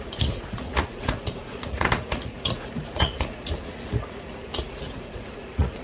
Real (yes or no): no